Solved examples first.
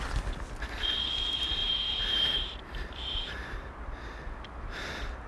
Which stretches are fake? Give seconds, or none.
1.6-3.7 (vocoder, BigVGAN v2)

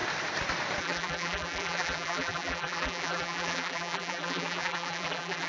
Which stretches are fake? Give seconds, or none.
0.8-5.5 (vocoder, BigVGAN v2)

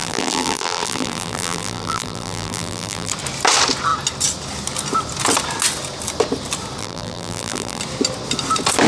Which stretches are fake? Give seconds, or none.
0.0-3.1 (vocoder, BigVGAN v2); 6.8-7.8